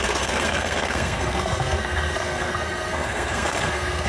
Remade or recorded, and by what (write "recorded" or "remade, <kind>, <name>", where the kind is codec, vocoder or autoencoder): remade, codec, SNAC